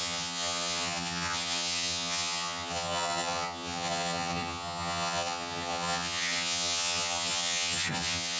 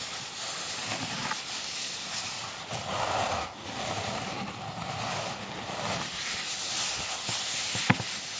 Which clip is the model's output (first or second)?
first